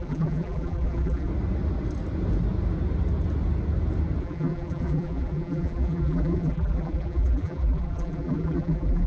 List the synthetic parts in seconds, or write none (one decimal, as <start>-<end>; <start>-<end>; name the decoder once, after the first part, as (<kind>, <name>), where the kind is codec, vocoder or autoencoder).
0.0-1.3 (vocoder, BigVGAN v2); 4.2-9.1